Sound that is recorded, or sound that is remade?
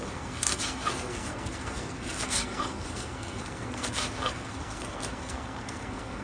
remade